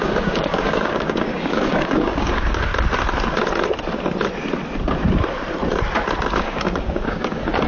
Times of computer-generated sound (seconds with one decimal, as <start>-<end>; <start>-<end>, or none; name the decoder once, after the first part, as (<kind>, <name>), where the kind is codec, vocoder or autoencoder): 0.0-2.7 (codec, DAC); 6.4-7.7